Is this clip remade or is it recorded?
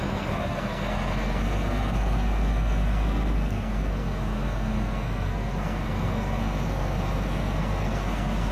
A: remade